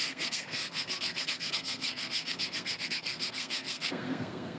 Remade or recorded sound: remade